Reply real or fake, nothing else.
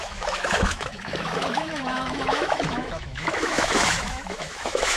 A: fake